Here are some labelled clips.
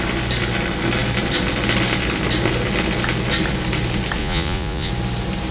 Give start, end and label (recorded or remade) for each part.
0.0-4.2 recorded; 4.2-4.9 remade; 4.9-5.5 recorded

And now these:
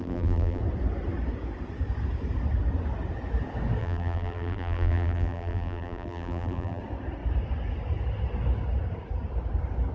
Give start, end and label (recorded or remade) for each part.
0.0-0.6 remade; 0.6-3.8 recorded; 3.8-6.8 remade; 6.8-9.9 recorded

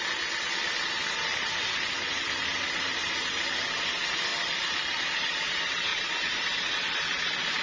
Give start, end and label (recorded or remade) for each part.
0.0-5.9 recorded; 5.9-6.7 remade; 6.7-7.6 recorded

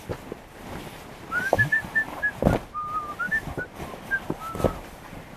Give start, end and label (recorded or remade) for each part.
0.0-5.4 recorded